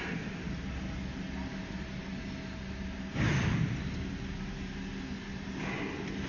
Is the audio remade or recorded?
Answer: recorded